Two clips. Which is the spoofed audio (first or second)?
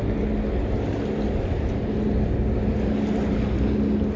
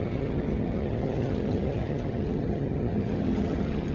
second